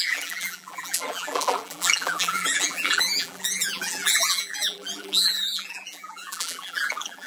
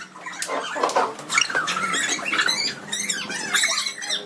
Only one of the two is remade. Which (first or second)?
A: first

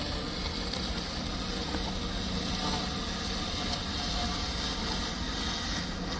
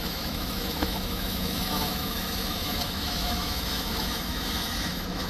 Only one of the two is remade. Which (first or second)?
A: second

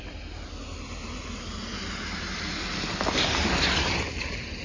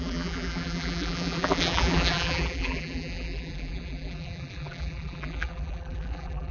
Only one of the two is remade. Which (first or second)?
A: second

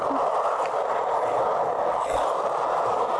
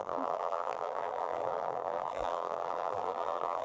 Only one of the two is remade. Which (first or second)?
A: second